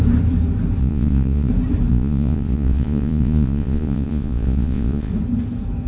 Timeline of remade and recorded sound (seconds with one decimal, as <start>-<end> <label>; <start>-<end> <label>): 0.0-0.8 recorded; 0.8-1.5 remade; 1.5-1.9 recorded; 1.9-5.1 remade; 5.1-5.9 recorded

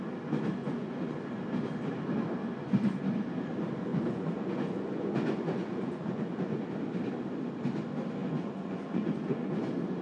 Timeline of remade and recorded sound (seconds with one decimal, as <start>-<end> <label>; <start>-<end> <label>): 0.0-0.6 recorded; 0.6-1.2 remade; 1.2-3.9 recorded; 3.9-6.6 remade; 6.6-8.2 recorded; 8.2-9.6 remade; 9.6-10.0 recorded

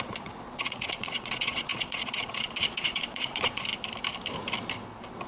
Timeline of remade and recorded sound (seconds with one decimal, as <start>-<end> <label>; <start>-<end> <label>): 0.0-3.7 remade; 3.7-5.3 recorded

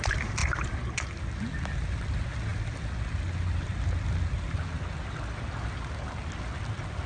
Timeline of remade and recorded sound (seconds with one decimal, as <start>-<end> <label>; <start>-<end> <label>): 0.0-7.1 recorded

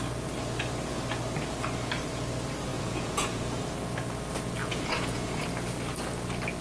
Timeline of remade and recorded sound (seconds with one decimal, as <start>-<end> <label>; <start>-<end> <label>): 0.0-2.7 recorded; 2.7-3.6 remade; 3.6-4.6 recorded; 4.6-5.4 remade; 5.4-6.6 recorded

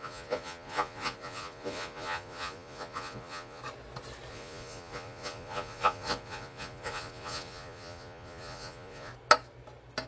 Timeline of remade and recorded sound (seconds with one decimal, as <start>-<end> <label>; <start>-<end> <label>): 0.0-3.6 remade; 3.6-4.3 recorded; 4.3-9.1 remade; 9.1-10.1 recorded

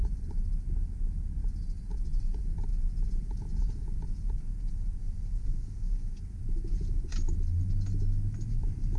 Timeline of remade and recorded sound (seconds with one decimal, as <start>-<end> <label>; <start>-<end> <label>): 0.0-2.7 recorded; 2.7-7.0 remade; 7.0-9.0 recorded